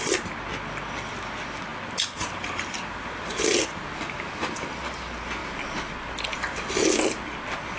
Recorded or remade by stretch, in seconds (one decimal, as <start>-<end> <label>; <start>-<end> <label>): 0.0-7.8 recorded

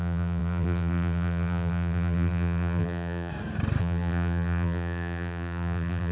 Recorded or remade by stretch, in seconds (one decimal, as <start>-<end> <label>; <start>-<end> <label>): 0.0-3.3 remade; 3.3-3.8 recorded; 3.8-6.1 remade

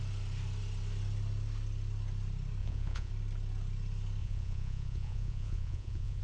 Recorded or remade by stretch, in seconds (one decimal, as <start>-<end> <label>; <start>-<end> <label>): 0.0-2.6 recorded; 2.6-3.1 remade; 3.1-4.2 recorded; 4.2-6.2 remade

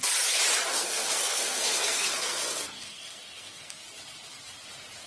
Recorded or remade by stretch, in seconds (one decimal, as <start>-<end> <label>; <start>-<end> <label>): 0.0-0.7 recorded; 0.7-3.8 remade; 3.8-5.1 recorded

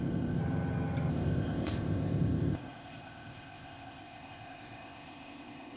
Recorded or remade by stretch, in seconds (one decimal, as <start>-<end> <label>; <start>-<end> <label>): 0.0-0.4 remade; 0.4-1.1 recorded; 1.1-5.8 remade

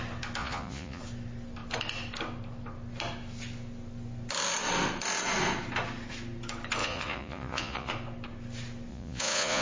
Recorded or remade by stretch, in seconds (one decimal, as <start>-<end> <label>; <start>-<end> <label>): 0.0-0.4 recorded; 0.4-1.0 remade; 1.0-6.8 recorded; 6.8-7.9 remade; 7.9-8.9 recorded; 8.9-9.6 remade

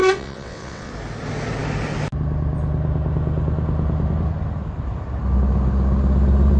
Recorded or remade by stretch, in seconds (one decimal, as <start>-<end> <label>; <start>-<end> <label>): 0.0-0.9 remade; 0.9-6.6 recorded

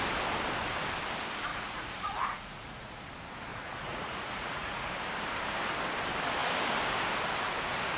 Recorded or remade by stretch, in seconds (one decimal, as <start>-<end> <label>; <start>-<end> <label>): 0.0-1.5 recorded; 1.5-3.0 remade; 3.0-3.5 recorded; 3.5-4.9 remade; 4.9-8.0 recorded